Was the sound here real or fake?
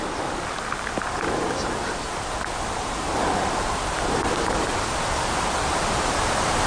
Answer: real